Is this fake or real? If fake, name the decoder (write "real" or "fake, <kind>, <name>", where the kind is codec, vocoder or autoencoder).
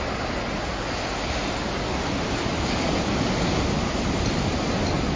real